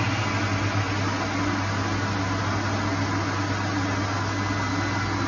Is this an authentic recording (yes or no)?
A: yes